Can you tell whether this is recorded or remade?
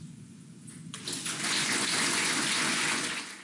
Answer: remade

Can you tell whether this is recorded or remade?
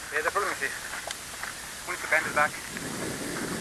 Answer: recorded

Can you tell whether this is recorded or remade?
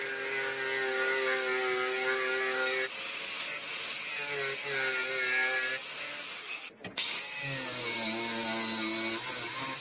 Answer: recorded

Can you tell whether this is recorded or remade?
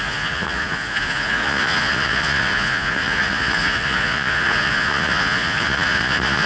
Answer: remade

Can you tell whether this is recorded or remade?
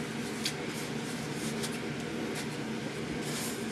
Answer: recorded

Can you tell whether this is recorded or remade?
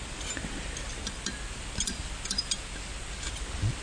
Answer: recorded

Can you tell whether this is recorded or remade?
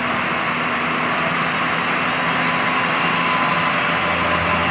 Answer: recorded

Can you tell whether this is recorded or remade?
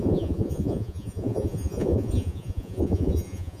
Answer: remade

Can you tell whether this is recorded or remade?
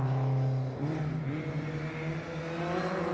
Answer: recorded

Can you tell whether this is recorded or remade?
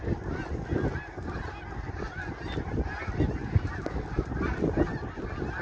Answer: recorded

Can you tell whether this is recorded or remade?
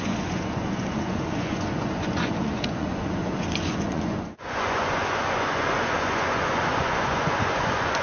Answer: remade